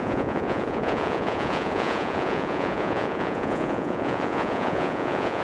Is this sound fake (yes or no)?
yes